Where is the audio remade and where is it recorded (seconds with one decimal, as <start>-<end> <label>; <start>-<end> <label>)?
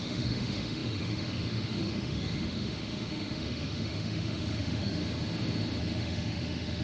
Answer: 0.0-5.0 remade; 5.0-5.8 recorded; 5.8-6.8 remade